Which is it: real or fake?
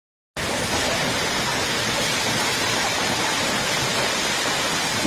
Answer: real